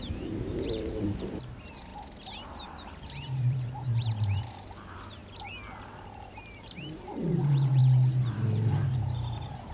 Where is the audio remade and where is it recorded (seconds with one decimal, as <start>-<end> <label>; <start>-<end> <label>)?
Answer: 0.0-1.9 remade; 1.9-2.5 recorded; 2.5-5.2 remade; 5.2-6.3 recorded; 6.3-7.8 remade; 7.8-8.3 recorded; 8.3-9.7 remade